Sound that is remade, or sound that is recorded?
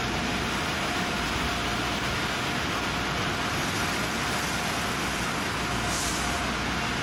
recorded